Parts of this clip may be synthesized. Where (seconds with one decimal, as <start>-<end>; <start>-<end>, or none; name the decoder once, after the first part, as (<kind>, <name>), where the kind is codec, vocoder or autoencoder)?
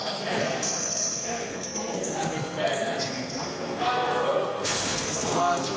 0.0-5.8 (codec, SNAC)